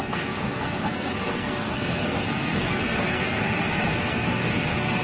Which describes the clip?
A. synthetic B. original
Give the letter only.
A